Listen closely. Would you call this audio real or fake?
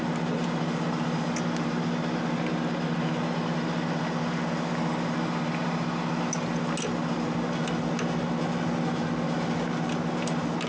real